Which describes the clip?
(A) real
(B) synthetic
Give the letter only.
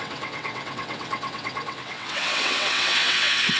B